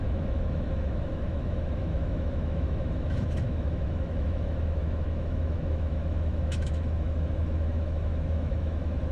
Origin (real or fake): fake